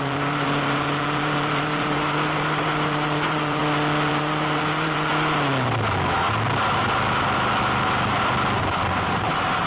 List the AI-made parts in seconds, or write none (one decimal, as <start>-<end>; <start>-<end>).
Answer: 0.0-3.6; 4.1-5.1; 8.6-9.7